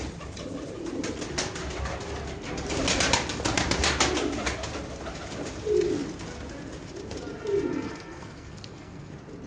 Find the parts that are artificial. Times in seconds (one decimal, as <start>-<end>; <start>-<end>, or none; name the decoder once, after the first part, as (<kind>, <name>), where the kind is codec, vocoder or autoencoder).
7.7-9.1 (codec, SNAC)